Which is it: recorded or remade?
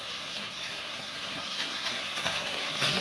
remade